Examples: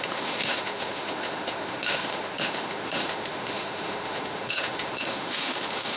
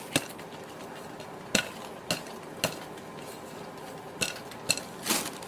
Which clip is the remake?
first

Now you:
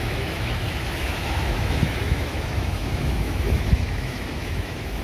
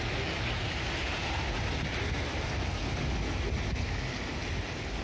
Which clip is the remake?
first